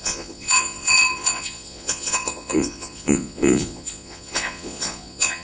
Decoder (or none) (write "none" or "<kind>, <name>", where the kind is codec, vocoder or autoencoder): vocoder, Vocos